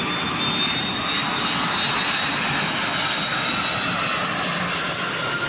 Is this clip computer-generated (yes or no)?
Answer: no